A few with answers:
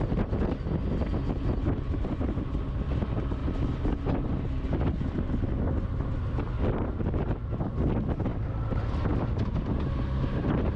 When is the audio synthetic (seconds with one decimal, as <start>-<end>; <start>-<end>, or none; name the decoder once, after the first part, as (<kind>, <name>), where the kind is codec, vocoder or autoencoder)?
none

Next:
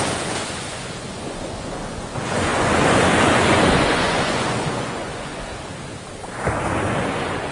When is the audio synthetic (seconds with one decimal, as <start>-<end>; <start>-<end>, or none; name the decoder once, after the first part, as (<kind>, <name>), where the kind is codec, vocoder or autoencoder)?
0.0-5.5 (vocoder, Vocos); 6.8-7.5

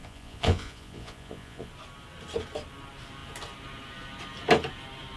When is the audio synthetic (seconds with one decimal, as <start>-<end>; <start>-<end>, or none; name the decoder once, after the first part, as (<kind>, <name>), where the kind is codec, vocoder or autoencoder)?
0.0-1.7 (vocoder, Vocos)